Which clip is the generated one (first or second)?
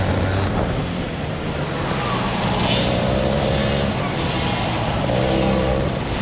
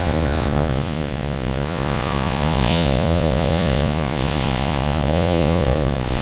second